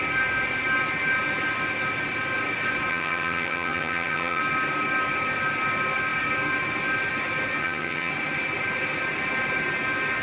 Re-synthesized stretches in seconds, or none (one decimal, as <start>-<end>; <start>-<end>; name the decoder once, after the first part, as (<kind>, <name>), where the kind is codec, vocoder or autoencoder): 2.9-4.4 (vocoder, HiFi-GAN); 7.6-8.1